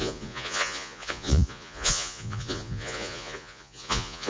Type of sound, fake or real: fake